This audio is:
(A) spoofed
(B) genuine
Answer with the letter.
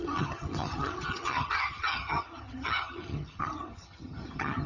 A